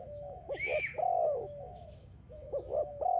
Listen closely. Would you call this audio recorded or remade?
remade